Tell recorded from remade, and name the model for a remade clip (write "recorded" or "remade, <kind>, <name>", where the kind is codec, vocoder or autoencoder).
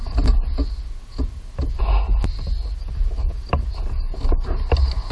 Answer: recorded